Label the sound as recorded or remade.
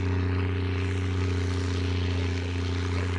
recorded